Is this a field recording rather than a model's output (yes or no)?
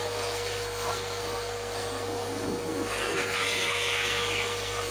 no